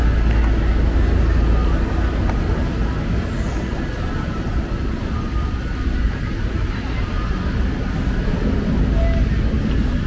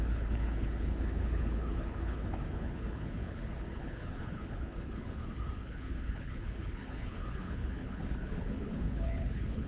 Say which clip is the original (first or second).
first